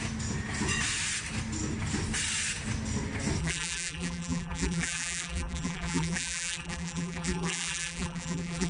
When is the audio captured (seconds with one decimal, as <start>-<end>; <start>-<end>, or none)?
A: 0.0-3.4

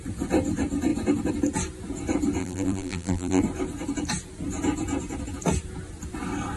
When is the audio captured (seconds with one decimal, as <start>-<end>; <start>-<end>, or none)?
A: 0.0-2.4; 3.4-6.6

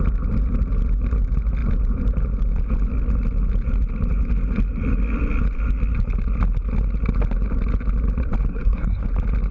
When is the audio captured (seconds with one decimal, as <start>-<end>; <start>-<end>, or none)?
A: 0.0-8.5; 9.0-9.5

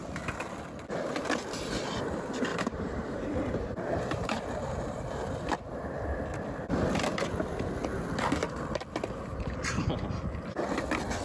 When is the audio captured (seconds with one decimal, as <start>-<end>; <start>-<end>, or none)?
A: 0.0-2.5; 5.5-11.2

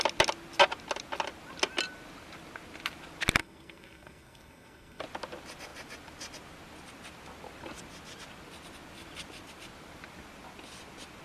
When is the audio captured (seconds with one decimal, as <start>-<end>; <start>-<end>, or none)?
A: 0.0-3.4; 5.0-11.2

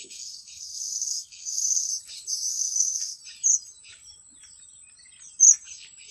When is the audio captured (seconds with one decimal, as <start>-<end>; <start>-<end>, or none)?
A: 1.9-2.5; 3.2-6.1

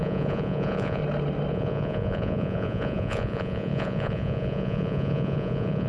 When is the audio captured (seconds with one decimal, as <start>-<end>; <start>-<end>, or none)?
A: 1.0-1.5